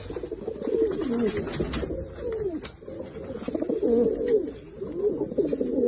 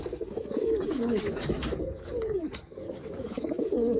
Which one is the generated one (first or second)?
second